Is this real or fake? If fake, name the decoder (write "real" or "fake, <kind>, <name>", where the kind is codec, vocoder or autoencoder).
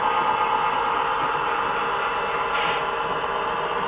real